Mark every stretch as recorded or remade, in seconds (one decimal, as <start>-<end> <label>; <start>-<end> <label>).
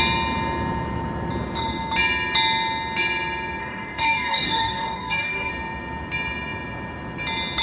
0.0-3.6 recorded; 3.6-5.5 remade; 5.5-7.6 recorded